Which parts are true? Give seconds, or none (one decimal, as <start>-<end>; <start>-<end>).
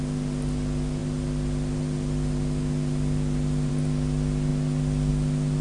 0.0-5.6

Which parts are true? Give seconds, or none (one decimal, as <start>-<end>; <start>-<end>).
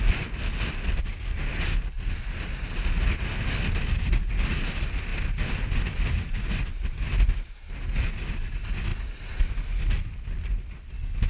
0.0-11.3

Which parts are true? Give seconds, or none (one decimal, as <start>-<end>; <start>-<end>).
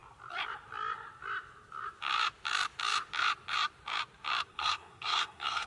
0.0-4.5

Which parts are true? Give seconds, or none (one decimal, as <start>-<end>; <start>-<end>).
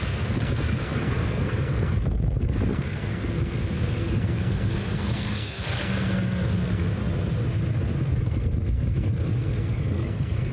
7.0-8.0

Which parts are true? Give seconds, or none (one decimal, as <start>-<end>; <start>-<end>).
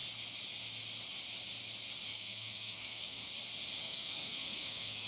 0.0-2.1; 3.3-3.8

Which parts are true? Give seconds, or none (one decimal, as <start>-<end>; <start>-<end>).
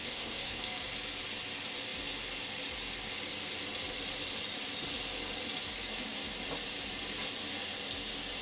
0.6-8.4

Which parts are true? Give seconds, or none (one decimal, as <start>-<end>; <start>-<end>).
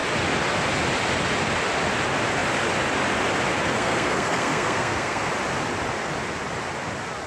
0.0-3.7; 5.3-7.3